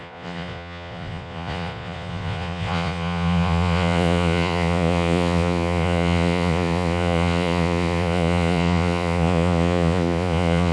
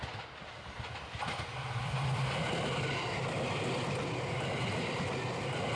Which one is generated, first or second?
first